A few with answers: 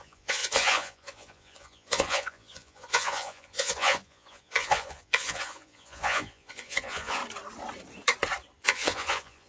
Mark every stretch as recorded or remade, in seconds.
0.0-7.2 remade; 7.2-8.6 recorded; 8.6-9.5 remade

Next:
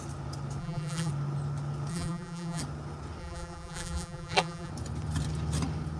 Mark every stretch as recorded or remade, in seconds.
0.0-0.6 recorded; 0.6-1.1 remade; 1.1-1.9 recorded; 1.9-2.6 remade; 2.6-3.2 recorded; 3.2-4.7 remade; 4.7-6.0 recorded

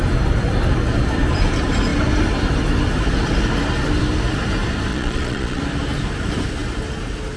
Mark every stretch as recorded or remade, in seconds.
0.0-4.9 recorded; 4.9-5.6 remade; 5.6-7.4 recorded

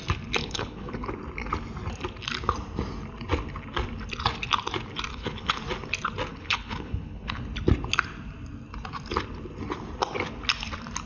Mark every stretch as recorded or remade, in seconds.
0.0-0.4 recorded; 0.4-1.1 remade; 1.1-5.1 recorded; 5.1-5.6 remade; 5.6-6.3 recorded; 6.3-7.4 remade; 7.4-11.1 recorded

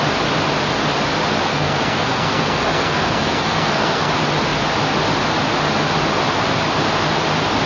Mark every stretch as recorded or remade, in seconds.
0.0-1.5 recorded; 1.5-4.1 remade; 4.1-7.7 recorded

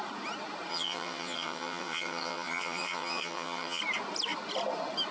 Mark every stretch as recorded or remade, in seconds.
0.0-0.7 recorded; 0.7-3.8 remade; 3.8-5.1 recorded

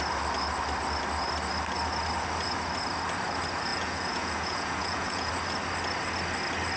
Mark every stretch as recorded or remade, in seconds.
0.0-3.7 recorded; 3.7-5.3 remade; 5.3-6.8 recorded

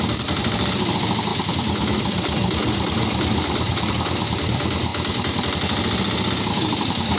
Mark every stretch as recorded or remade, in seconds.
0.0-4.9 remade; 4.9-6.5 recorded; 6.5-7.2 remade